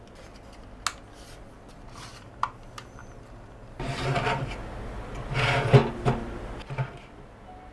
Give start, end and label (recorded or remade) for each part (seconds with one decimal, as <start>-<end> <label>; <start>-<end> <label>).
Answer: 0.0-2.1 recorded; 2.1-4.5 remade; 4.5-7.7 recorded